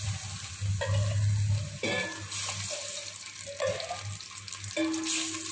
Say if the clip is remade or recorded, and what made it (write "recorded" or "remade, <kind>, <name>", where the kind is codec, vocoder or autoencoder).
recorded